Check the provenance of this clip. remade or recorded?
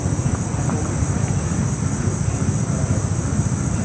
recorded